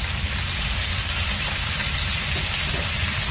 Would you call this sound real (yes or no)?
no